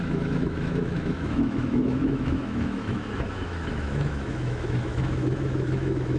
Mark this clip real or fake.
fake